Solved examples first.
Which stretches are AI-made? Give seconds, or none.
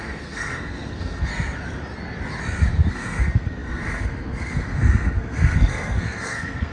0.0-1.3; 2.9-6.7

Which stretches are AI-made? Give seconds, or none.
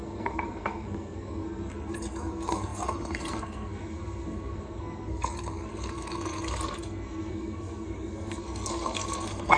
0.0-9.6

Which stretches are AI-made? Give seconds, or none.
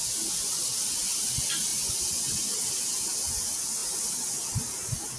none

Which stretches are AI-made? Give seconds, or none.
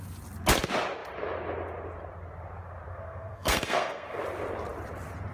2.9-4.2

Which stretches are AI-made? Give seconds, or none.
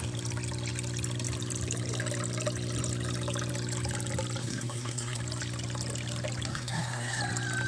4.4-5.2; 6.5-7.2